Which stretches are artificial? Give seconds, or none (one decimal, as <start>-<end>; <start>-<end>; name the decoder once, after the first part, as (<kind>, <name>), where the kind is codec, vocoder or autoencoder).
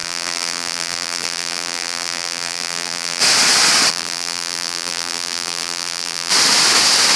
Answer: 0.0-3.2 (vocoder, BigVGAN v2); 3.9-6.3